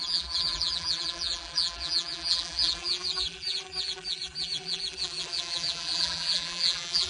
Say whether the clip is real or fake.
fake